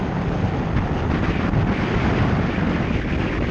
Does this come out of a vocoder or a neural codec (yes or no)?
no